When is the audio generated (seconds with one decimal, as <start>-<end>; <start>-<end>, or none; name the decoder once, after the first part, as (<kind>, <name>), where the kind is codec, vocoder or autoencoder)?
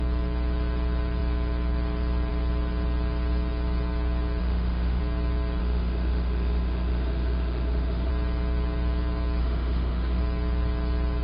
4.4-5.0 (autoencoder, DAC-VAE); 5.6-8.1; 9.4-10.2